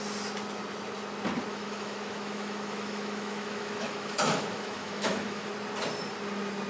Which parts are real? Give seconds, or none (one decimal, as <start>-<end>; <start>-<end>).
0.0-1.5; 5.5-6.7